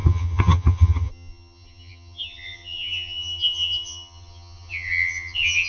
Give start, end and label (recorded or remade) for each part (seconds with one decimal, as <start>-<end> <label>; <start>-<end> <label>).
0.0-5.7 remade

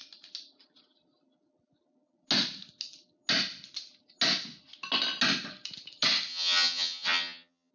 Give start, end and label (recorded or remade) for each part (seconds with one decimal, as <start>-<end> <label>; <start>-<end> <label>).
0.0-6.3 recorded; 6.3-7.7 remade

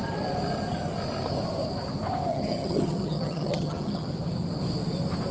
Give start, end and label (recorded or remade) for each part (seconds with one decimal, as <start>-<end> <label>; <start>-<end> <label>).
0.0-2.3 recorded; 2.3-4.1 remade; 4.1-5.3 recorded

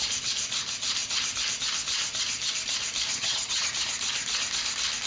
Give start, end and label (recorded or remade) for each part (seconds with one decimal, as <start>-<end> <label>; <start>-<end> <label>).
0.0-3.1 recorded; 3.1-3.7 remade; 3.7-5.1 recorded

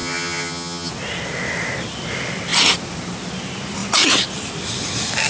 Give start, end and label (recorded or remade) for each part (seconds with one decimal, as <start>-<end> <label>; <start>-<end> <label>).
0.0-0.9 remade; 0.9-5.3 recorded

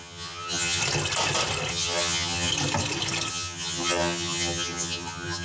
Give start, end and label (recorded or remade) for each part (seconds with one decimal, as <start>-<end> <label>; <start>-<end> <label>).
0.0-0.8 remade; 0.8-1.7 recorded; 1.7-2.5 remade; 2.5-3.3 recorded; 3.3-5.4 remade

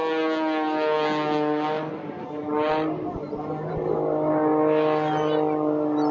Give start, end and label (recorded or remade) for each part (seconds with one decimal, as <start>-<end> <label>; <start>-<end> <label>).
0.0-6.1 recorded